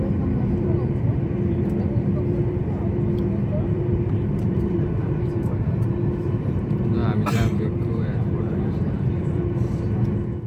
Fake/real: fake